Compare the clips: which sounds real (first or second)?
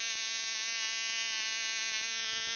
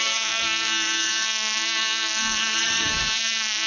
first